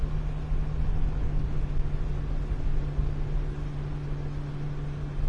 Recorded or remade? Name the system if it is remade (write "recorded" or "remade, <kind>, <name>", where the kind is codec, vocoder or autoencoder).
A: recorded